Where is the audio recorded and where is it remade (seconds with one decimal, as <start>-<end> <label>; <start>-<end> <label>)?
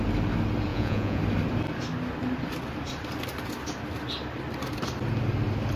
0.0-0.7 recorded; 0.7-1.2 remade; 1.2-5.8 recorded